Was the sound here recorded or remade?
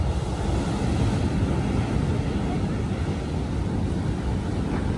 recorded